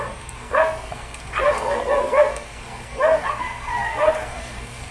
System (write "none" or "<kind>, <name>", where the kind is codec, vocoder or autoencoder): codec, SNAC